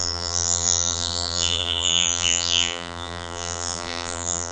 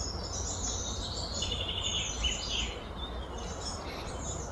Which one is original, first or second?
second